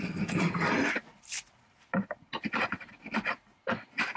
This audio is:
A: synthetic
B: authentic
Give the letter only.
B